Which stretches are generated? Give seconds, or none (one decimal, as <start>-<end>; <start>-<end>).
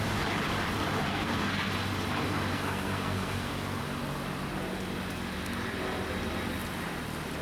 1.1-1.7; 2.5-3.8